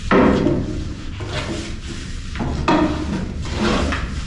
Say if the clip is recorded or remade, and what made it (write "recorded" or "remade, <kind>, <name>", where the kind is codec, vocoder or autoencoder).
recorded